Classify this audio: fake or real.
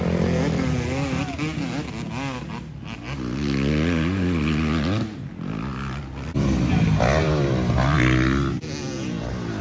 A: real